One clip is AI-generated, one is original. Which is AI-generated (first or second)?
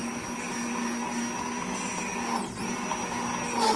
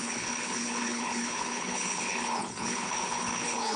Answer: second